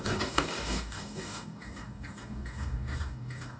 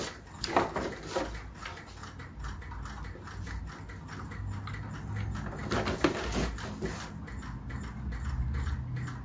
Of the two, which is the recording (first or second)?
second